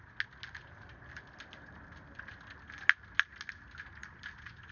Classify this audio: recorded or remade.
recorded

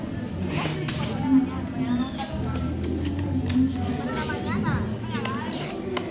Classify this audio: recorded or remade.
recorded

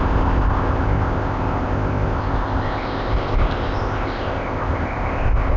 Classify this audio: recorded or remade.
remade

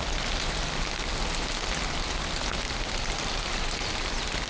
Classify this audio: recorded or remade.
recorded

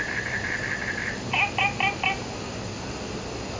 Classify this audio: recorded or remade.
recorded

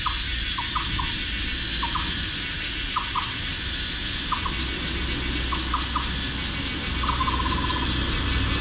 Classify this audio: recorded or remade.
recorded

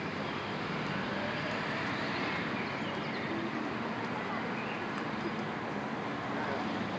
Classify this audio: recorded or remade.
recorded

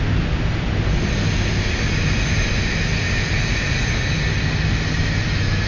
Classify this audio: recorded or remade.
recorded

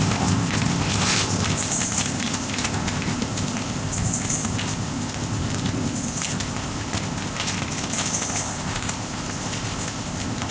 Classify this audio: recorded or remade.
remade